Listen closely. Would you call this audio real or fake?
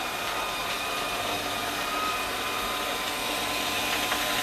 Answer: real